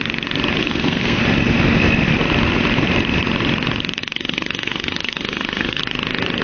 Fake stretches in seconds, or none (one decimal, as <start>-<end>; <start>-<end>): 0.6-1.2; 4.0-5.8